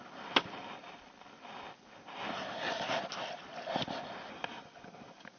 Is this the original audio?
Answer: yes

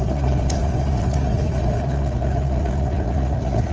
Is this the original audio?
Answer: no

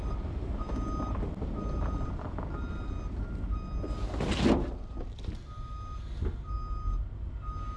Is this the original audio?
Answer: yes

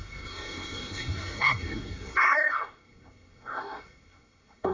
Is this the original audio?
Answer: no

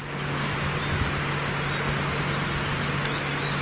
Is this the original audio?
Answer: yes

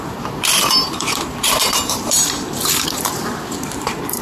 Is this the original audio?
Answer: no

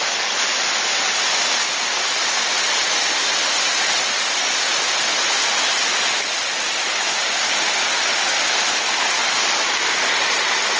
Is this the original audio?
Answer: yes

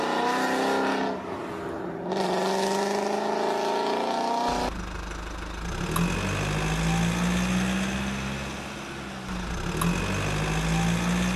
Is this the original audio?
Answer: yes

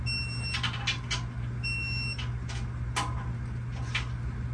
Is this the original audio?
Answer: yes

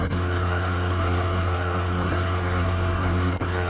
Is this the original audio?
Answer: no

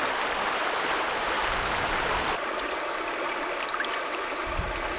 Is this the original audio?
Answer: yes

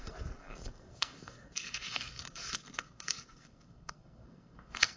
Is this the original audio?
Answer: no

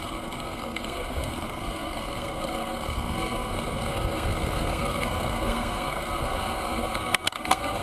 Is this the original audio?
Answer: no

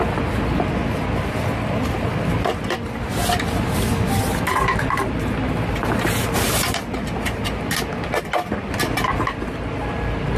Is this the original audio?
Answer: yes